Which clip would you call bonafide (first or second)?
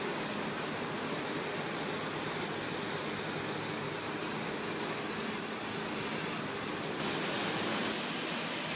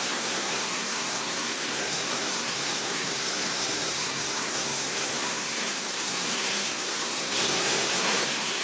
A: first